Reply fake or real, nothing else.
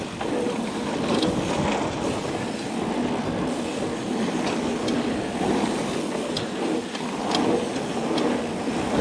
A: real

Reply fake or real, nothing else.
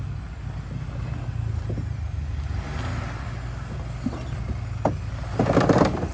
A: real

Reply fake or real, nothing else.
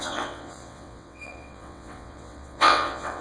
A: fake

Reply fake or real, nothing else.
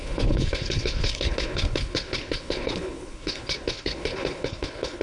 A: fake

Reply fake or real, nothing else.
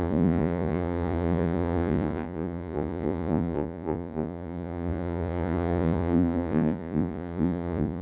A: fake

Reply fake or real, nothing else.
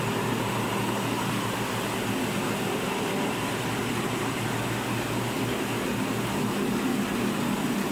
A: real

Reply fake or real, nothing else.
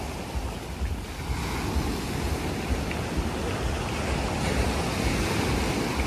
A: real